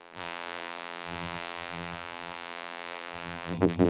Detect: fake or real fake